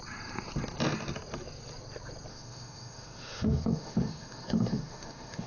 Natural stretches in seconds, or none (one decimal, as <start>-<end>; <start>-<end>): 0.0-2.3